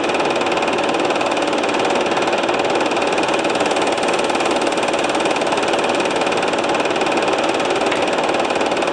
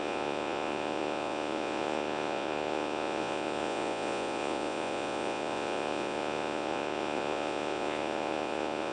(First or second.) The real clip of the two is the first